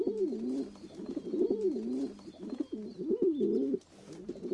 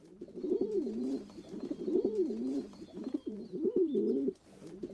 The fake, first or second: second